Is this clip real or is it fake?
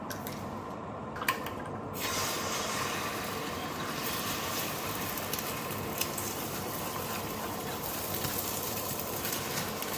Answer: fake